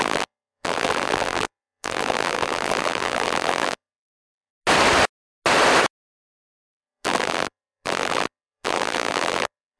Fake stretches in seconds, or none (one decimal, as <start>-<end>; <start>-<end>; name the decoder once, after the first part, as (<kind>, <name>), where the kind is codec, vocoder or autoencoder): 0.0-4.5 (vocoder, BigVGAN v2); 6.2-9.8